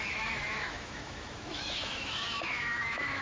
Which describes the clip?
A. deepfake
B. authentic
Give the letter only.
A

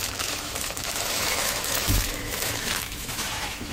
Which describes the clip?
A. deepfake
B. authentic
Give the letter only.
A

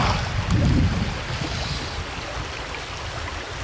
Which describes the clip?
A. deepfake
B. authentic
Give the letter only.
B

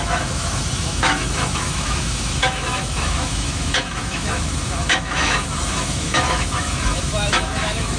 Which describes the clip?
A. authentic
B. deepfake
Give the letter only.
B